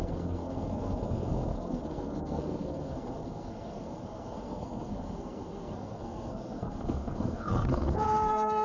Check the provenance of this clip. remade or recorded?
remade